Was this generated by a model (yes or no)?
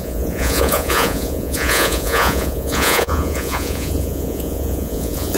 yes